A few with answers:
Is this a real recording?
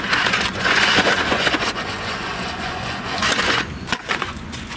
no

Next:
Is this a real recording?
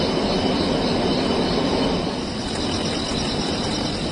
yes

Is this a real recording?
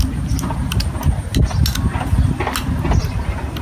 yes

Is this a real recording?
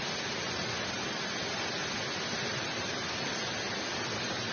yes